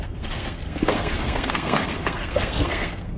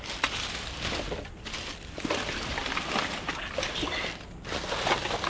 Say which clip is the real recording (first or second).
second